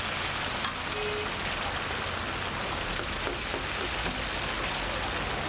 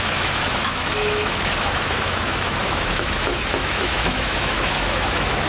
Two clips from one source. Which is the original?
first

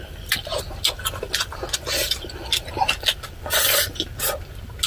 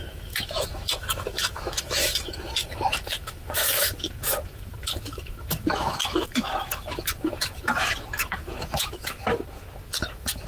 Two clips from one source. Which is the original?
first